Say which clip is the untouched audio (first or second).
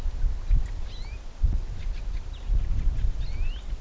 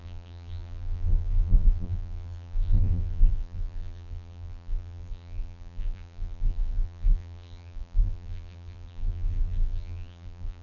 first